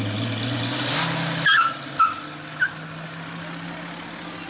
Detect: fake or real real